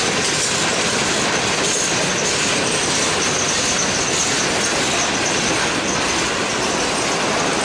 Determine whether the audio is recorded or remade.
recorded